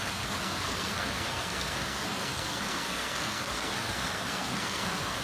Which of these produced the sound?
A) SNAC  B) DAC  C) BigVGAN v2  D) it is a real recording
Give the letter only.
A